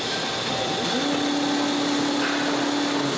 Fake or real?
real